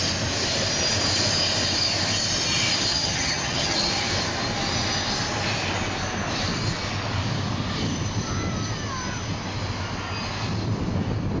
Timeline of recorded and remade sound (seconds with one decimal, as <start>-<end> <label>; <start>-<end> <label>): 0.0-2.9 recorded; 2.9-3.9 remade; 3.9-11.4 recorded